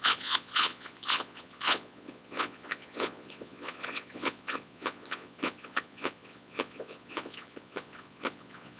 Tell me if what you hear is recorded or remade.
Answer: remade